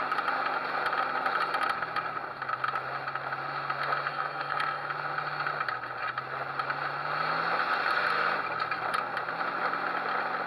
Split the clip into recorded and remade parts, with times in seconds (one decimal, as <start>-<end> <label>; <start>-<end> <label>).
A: 0.0-4.1 recorded; 4.1-4.9 remade; 4.9-10.5 recorded